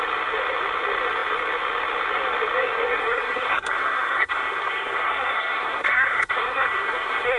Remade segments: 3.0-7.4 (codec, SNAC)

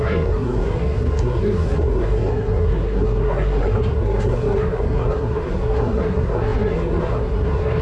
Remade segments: 0.0-7.8 (codec, SNAC)

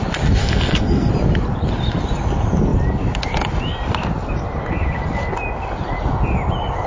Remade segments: 0.4-1.1 (codec, SNAC)

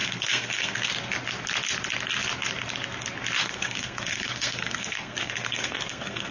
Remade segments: 0.0-0.9 (codec, SNAC); 3.4-6.3